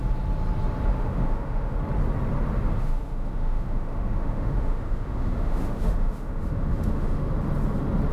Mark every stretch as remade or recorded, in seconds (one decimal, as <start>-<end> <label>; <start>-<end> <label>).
0.0-0.9 recorded; 0.9-1.8 remade; 1.8-2.8 recorded; 2.8-7.3 remade; 7.3-8.1 recorded